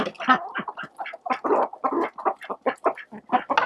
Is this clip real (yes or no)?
yes